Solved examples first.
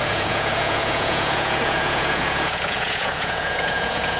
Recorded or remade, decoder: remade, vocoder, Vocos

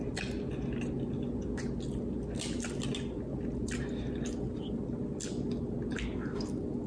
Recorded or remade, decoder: recorded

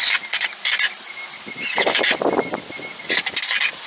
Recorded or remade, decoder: recorded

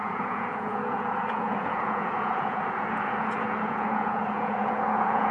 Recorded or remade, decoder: remade, vocoder, Vocos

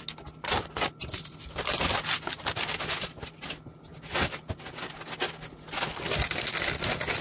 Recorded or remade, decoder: recorded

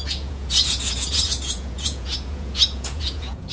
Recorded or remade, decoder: remade, vocoder, Vocos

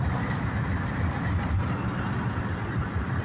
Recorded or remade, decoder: recorded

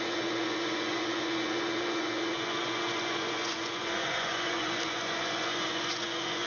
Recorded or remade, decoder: remade, vocoder, Vocos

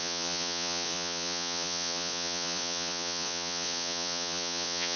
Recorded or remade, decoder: remade, vocoder, Vocos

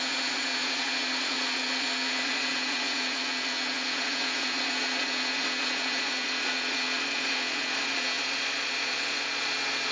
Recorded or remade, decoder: remade, vocoder, Vocos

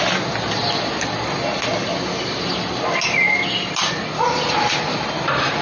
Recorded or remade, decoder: recorded